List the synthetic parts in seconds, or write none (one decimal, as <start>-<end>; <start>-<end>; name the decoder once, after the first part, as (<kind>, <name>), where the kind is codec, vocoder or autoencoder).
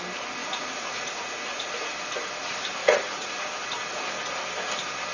0.4-1.9 (vocoder, Vocos); 2.8-3.3